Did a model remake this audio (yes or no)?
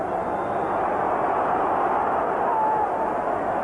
no